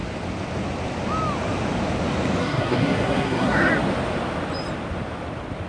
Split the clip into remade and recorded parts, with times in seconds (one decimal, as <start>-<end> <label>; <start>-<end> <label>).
0.0-2.4 recorded; 2.4-3.7 remade; 3.7-5.7 recorded